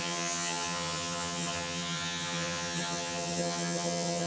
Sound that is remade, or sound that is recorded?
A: remade